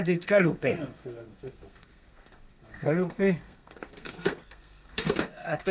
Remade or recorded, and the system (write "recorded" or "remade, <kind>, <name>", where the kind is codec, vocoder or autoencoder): remade, codec, SNAC